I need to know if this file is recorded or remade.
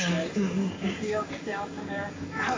remade